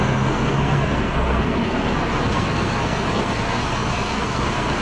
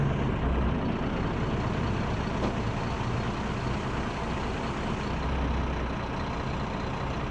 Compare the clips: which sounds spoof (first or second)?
first